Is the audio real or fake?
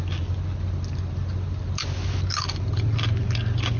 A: real